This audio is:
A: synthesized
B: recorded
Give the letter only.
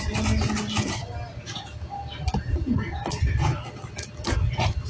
B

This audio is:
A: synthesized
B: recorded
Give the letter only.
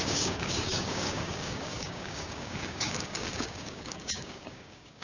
A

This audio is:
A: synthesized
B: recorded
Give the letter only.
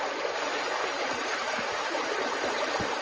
A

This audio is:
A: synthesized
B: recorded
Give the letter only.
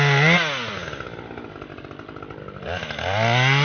B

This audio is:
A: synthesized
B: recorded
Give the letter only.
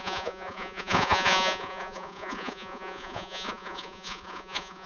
A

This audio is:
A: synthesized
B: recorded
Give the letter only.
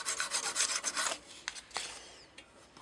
B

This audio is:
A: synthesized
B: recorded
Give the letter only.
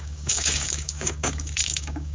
A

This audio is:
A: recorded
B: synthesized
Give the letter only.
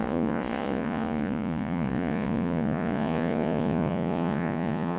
B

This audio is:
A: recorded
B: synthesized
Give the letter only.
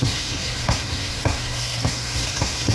B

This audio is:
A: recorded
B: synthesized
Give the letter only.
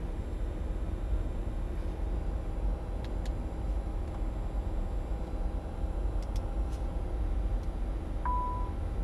A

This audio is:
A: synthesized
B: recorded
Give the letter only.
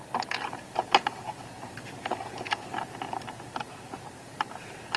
A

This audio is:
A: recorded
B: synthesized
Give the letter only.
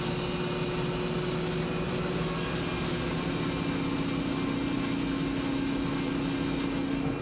A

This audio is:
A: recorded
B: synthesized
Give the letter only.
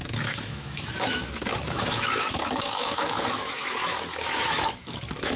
B